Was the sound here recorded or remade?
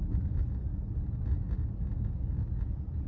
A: recorded